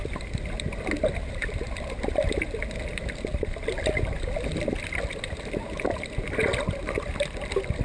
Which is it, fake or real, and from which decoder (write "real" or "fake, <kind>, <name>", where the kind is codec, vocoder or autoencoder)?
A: real